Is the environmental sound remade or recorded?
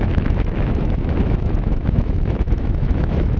remade